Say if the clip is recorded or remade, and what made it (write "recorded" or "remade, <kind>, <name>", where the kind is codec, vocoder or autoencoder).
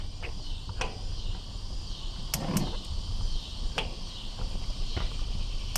recorded